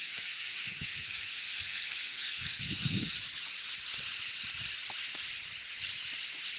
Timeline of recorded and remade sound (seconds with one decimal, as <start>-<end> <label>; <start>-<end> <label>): 0.0-3.2 remade; 3.2-6.6 recorded